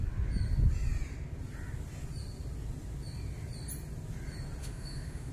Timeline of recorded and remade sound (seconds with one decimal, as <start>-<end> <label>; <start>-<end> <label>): 0.0-4.6 recorded; 4.6-5.3 remade